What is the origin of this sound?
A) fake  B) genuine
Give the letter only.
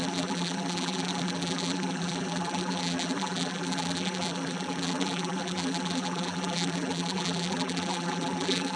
A